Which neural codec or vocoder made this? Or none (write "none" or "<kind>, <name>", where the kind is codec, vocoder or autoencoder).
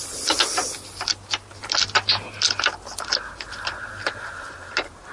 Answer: none